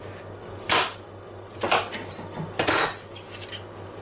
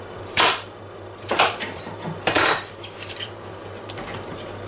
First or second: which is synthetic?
second